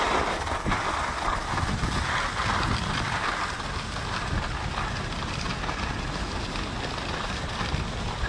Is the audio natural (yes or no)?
yes